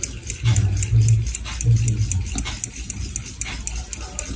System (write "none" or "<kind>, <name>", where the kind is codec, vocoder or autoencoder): none